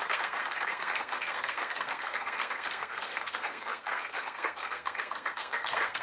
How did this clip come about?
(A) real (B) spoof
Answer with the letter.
B